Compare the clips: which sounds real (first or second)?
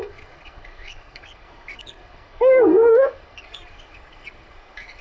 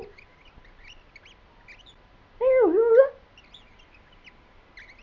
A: second